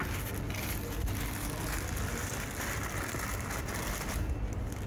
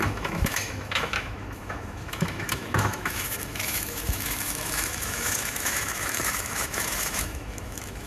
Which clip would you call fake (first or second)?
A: second